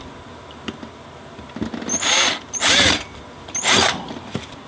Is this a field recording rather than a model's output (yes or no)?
yes